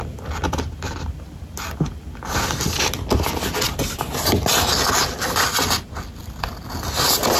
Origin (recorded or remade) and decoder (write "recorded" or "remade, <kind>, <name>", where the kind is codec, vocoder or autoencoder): recorded